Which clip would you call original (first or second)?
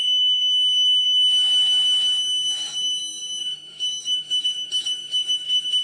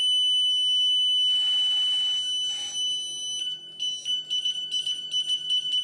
second